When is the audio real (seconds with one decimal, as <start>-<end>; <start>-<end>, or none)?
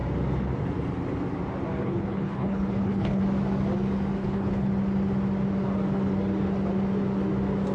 0.0-1.8; 3.2-4.2; 4.7-7.7